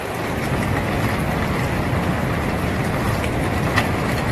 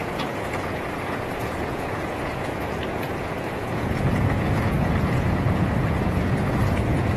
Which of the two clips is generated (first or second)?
second